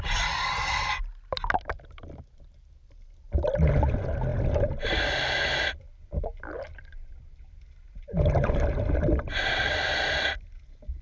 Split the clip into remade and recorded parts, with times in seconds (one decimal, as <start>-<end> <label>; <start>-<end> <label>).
0.0-11.0 recorded